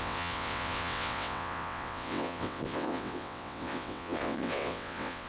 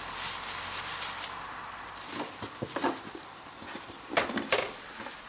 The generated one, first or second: first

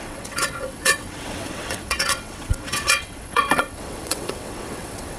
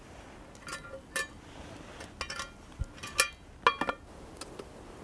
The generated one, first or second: first